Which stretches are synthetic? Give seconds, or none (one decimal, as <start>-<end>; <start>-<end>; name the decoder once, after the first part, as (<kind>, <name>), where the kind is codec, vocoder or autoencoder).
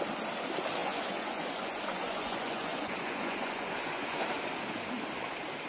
0.8-4.2 (vocoder, Vocos)